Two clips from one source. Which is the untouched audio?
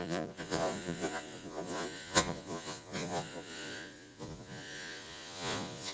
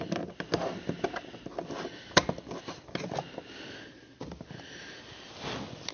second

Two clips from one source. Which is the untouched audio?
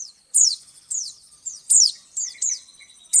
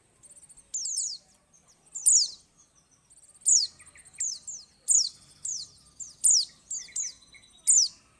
second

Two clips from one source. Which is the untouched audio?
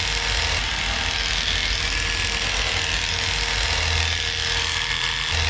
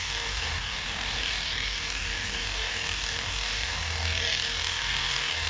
first